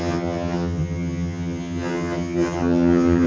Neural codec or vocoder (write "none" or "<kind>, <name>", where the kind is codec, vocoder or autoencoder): vocoder, HiFi-GAN